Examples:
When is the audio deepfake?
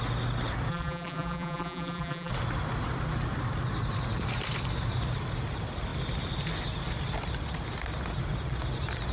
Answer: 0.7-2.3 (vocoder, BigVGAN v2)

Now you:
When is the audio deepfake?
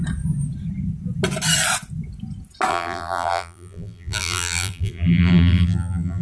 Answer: 2.7-6.2 (vocoder, BigVGAN v2)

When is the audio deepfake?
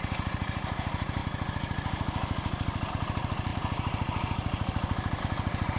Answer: 0.0-1.2 (vocoder, BigVGAN v2); 2.9-5.8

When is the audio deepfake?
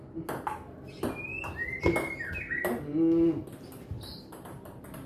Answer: 4.1-5.1 (vocoder, BigVGAN v2)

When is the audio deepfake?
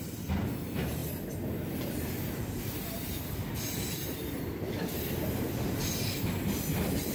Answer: none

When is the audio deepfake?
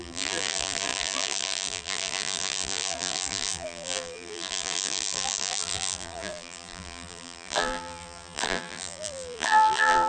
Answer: 0.0-10.1 (vocoder, BigVGAN v2)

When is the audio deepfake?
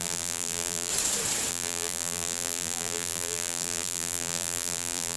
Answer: 0.0-0.9 (vocoder, BigVGAN v2); 1.5-5.2